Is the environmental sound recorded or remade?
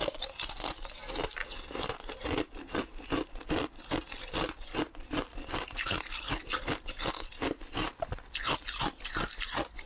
recorded